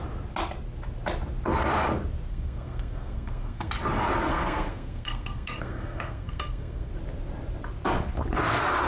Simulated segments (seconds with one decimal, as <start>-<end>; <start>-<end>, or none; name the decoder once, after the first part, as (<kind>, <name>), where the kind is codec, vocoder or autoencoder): 2.3-3.7 (codec, SNAC); 4.3-6.9